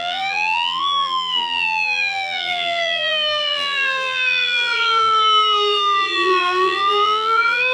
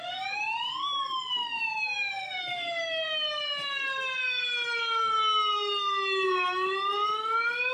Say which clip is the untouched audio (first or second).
second